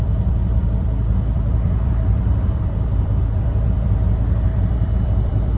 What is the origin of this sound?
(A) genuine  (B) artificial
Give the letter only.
B